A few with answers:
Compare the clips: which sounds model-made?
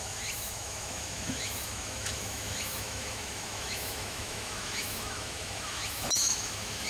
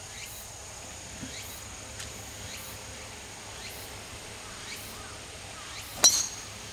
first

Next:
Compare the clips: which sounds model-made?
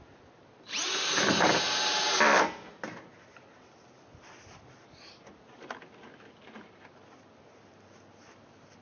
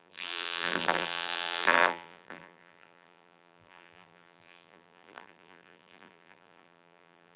second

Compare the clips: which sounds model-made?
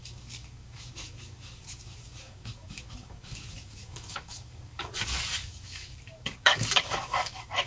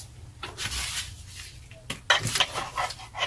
first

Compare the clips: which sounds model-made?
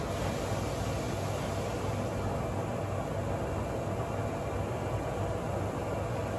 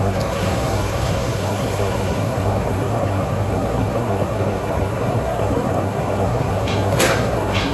second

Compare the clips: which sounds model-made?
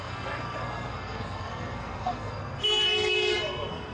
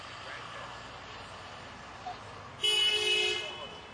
first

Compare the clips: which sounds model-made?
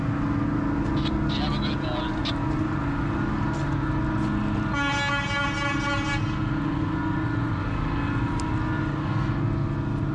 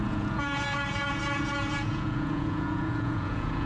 second